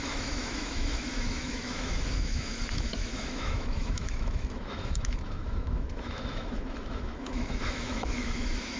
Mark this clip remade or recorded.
remade